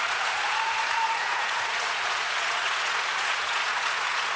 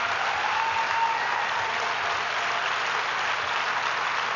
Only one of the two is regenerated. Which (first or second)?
first